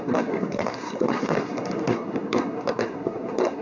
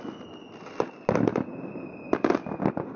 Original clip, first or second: second